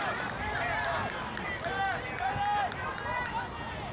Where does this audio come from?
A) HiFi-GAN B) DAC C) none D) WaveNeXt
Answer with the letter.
C